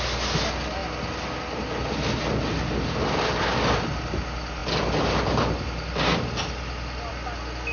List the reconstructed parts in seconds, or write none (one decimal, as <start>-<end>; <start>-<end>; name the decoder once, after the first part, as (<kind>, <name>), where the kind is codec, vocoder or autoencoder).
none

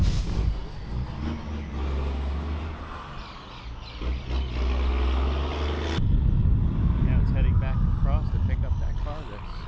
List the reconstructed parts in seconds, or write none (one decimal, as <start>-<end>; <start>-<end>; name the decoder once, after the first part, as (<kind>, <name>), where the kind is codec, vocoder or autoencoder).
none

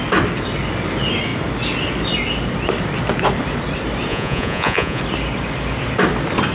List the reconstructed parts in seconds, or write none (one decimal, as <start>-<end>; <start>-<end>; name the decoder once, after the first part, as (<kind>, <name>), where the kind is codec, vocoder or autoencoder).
4.1-5.0 (vocoder, Vocos)

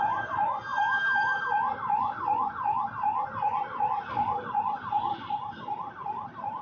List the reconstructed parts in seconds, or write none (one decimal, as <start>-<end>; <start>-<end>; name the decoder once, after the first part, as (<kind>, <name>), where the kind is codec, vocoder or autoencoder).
none